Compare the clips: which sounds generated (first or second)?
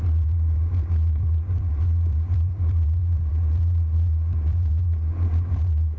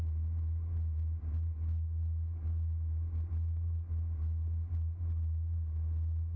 first